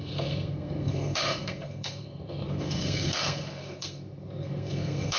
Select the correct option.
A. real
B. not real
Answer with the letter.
B